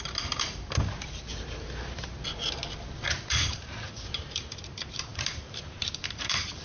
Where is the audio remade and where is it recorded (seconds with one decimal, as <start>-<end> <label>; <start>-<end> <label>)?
0.0-1.3 remade; 1.3-3.1 recorded; 3.1-6.6 remade